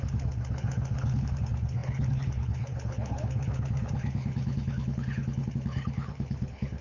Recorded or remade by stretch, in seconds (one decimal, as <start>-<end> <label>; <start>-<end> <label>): 0.0-6.8 remade